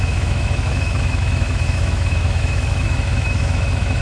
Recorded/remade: remade